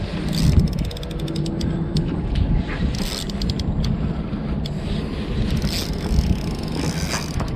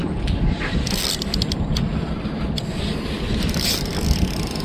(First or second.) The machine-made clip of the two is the second